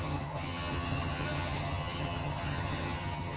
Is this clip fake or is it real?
fake